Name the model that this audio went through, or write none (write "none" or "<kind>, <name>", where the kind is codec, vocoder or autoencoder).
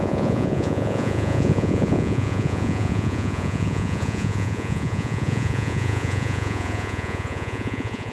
vocoder, Vocos